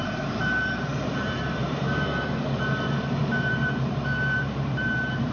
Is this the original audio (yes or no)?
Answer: no